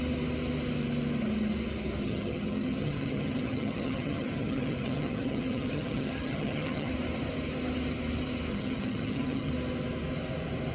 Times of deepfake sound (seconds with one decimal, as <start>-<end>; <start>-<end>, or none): 2.0-6.9; 8.5-9.5